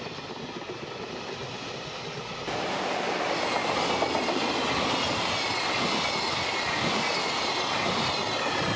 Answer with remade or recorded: recorded